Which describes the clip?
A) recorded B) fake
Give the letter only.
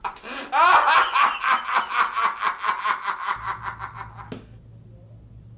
A